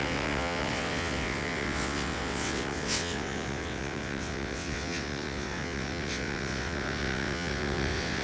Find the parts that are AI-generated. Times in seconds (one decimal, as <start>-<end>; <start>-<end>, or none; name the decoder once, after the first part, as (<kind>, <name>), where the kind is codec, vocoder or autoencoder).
0.0-8.2 (vocoder, WaveNeXt)